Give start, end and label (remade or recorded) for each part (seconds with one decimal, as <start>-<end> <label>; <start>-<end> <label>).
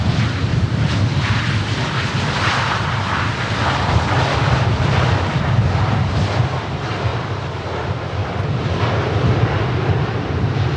0.0-0.5 recorded; 0.5-5.4 remade; 5.4-8.2 recorded; 8.2-8.8 remade; 8.8-10.8 recorded